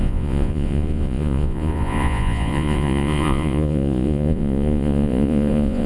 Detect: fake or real fake